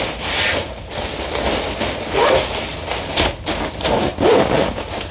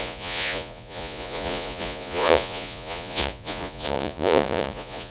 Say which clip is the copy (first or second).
second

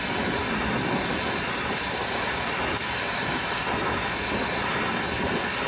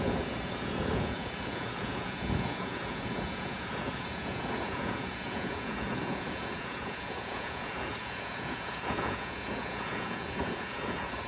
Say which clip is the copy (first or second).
second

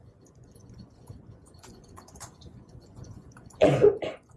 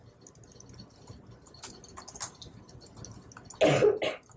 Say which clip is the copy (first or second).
first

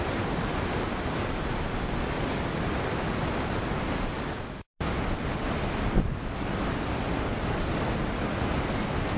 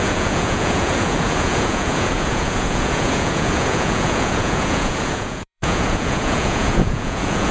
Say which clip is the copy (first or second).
second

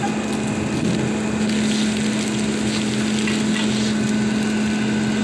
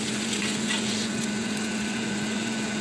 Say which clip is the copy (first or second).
second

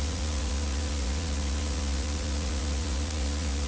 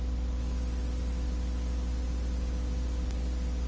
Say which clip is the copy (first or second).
first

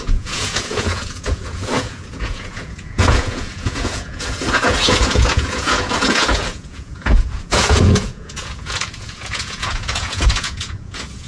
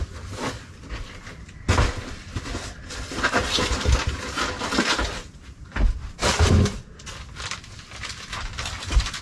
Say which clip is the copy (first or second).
first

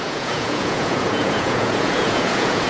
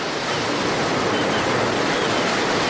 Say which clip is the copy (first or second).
first